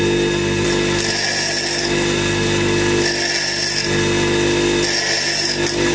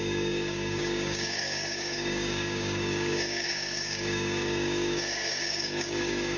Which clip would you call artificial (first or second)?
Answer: second